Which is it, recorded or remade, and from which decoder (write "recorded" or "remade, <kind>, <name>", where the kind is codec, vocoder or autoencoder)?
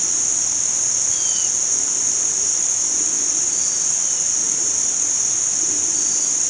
recorded